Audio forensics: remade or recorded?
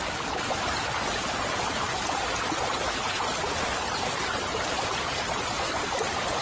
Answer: recorded